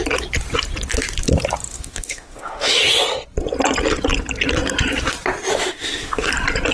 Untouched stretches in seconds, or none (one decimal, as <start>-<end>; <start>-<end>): 0.0-1.7; 2.8-5.5; 6.3-6.7